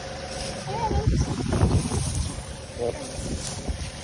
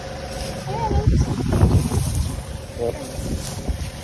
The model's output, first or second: first